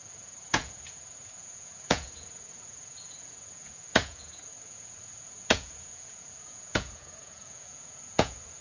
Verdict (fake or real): fake